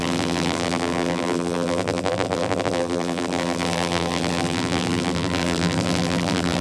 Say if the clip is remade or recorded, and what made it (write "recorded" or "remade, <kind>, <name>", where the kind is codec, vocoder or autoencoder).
remade, vocoder, BigVGAN v2